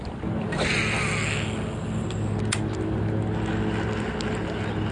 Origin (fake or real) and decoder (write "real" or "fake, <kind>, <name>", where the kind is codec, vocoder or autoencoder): real